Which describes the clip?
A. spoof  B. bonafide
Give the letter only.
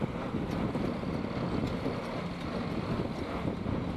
B